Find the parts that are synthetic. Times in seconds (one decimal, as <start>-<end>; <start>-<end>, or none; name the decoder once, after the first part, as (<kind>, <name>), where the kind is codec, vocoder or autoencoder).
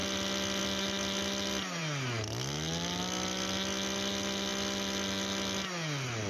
none